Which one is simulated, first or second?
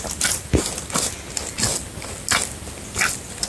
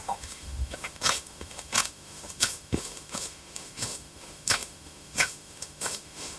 second